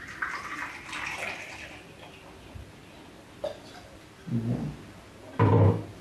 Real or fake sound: real